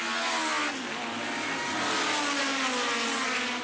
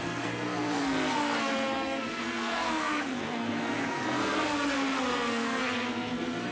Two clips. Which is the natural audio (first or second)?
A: first